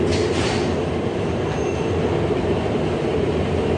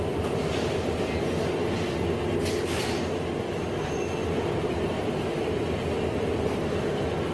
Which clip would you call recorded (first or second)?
second